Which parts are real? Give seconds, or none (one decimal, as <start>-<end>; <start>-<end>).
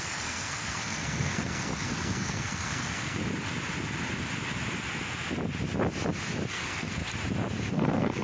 3.2-6.5; 7.0-7.7